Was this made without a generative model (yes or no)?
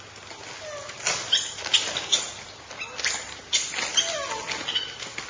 yes